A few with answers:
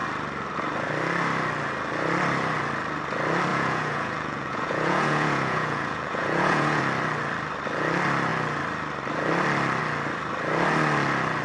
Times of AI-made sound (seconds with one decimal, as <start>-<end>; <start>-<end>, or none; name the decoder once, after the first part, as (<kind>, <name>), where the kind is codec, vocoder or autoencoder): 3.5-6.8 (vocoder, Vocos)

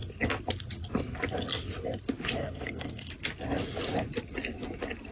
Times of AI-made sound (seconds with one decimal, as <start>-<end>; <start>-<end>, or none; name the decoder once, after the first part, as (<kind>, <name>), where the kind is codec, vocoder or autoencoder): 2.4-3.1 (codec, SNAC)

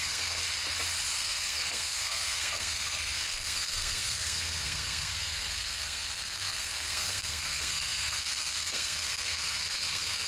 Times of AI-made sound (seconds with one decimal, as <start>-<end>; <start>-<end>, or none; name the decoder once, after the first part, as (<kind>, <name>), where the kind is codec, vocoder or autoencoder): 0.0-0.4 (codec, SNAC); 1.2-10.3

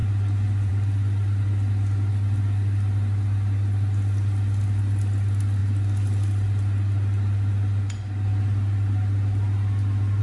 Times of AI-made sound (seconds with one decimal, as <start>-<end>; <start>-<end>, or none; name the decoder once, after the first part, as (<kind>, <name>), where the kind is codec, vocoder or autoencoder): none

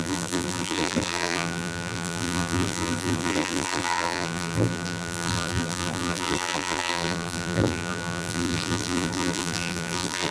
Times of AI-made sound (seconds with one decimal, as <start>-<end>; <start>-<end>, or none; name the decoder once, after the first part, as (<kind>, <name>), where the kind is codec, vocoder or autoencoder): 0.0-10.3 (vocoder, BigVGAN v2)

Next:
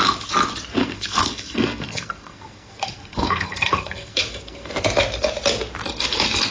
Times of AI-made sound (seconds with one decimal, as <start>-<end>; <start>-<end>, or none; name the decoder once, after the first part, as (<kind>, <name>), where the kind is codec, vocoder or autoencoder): 0.8-4.7 (codec, SNAC)

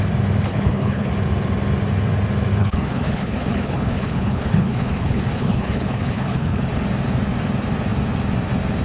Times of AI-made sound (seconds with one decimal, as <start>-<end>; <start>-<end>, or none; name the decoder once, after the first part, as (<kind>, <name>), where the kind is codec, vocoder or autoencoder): 0.5-1.1 (codec, HILCodec); 2.6-6.7